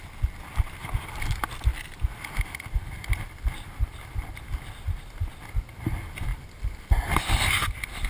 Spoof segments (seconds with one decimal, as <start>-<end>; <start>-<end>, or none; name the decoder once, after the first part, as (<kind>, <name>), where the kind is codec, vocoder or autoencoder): none